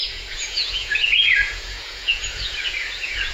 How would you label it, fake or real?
fake